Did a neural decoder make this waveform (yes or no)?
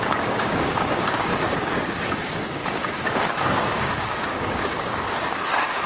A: yes